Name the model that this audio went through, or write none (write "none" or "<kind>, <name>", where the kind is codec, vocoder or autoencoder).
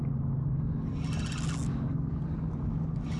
none